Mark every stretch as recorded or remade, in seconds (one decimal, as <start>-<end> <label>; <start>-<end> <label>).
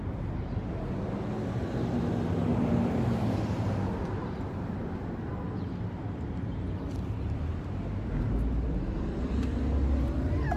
0.0-2.5 recorded; 2.5-3.4 remade; 3.4-10.6 recorded